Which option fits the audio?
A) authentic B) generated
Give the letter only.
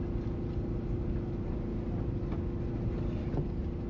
A